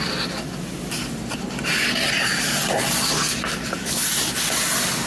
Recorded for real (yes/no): yes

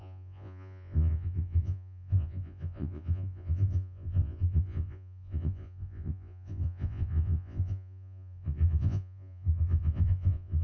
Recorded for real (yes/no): no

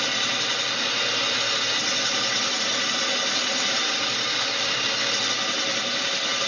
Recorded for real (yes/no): yes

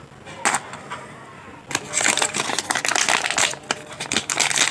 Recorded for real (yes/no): yes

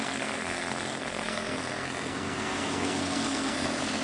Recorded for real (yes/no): no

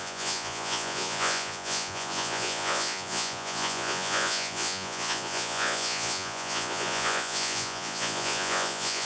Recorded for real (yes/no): no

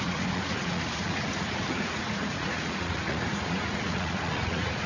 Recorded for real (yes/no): no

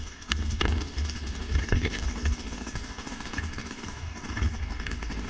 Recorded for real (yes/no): no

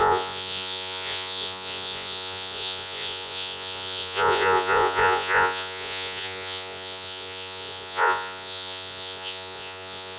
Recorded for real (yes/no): no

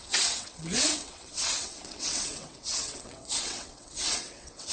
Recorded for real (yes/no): no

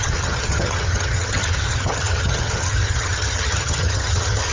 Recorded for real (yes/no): no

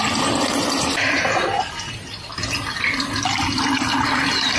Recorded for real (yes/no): yes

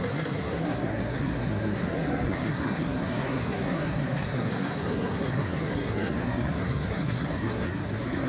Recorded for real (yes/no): no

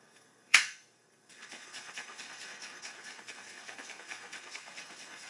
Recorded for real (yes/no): no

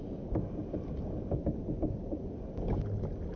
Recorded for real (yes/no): yes